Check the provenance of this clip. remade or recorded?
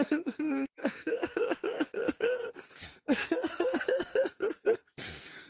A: remade